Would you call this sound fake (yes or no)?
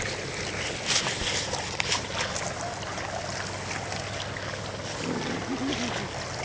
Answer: no